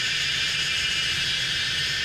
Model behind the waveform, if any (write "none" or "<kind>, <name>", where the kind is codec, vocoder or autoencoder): none